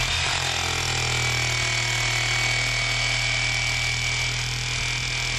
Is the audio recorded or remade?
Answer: recorded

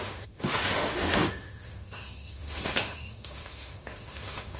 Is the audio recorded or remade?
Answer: remade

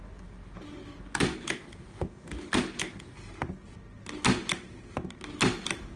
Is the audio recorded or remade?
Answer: recorded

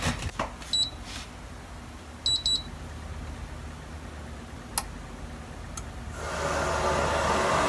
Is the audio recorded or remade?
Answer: recorded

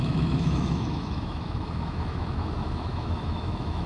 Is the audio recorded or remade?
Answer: remade